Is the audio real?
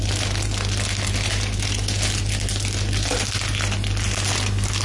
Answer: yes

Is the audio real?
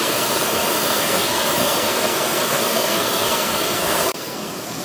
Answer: no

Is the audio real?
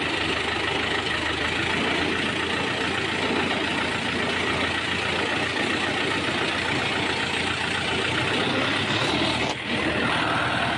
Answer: yes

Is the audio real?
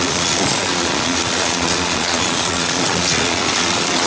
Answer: no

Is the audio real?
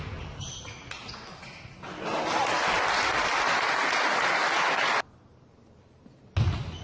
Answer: yes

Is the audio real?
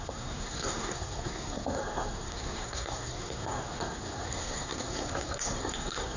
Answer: no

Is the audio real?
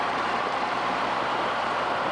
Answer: no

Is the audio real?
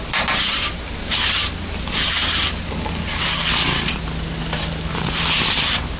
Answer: yes